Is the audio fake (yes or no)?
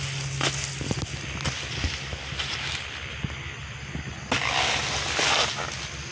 no